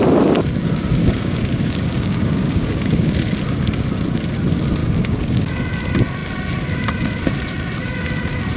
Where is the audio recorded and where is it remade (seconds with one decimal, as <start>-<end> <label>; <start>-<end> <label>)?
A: 0.0-1.0 recorded; 1.0-3.1 remade; 3.1-4.8 recorded; 4.8-5.5 remade; 5.5-8.6 recorded